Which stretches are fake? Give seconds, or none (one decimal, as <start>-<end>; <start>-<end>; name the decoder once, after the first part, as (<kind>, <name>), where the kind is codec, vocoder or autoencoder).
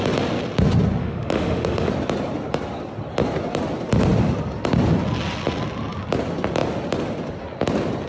1.0-1.9 (autoencoder, DAC-VAE)